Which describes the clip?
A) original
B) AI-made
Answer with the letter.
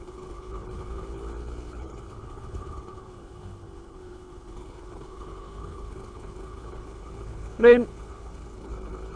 B